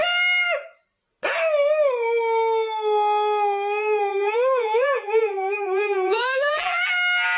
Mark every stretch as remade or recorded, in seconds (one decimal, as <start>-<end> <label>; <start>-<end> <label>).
0.0-4.1 recorded; 4.1-6.9 remade; 6.9-7.4 recorded